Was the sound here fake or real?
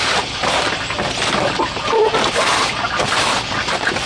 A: real